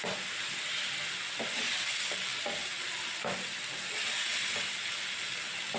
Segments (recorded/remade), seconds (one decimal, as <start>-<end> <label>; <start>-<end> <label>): 0.0-5.8 recorded